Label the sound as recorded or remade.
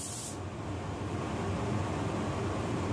recorded